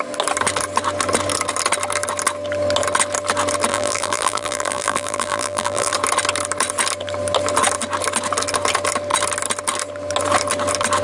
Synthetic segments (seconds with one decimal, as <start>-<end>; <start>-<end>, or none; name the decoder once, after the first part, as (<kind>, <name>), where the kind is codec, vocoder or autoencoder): 3.7-5.9 (vocoder, BigVGAN v2)